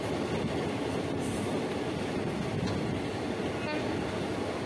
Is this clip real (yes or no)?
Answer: yes